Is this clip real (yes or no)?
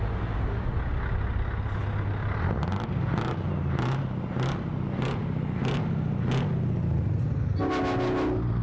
yes